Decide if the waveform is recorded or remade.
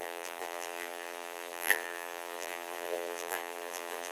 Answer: remade